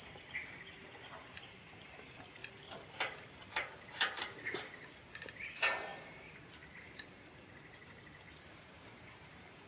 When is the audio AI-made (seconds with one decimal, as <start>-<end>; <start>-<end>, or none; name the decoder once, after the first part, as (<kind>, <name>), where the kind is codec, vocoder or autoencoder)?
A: 0.0-2.4 (vocoder, BigVGAN v2); 3.1-9.7